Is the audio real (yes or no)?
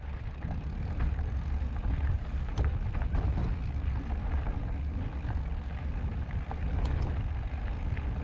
yes